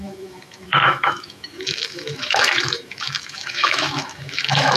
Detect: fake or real fake